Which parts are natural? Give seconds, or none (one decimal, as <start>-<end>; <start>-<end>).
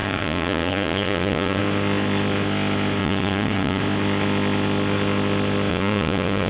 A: 1.6-3.0; 3.8-5.7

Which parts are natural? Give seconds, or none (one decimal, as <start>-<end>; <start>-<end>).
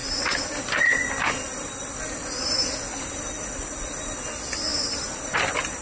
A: 0.0-5.8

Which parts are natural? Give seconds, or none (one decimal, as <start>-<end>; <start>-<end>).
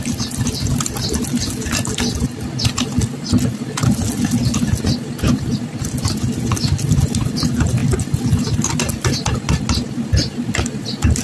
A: 0.0-11.2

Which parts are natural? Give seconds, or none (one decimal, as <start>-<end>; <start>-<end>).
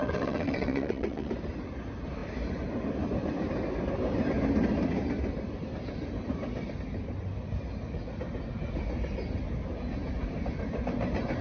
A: 1.3-11.4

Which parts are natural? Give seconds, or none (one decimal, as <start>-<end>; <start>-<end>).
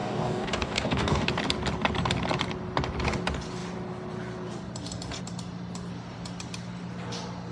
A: 1.3-7.5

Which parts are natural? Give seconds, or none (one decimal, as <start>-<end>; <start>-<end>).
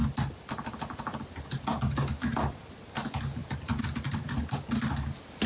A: 0.7-1.7; 2.6-3.4; 4.9-5.5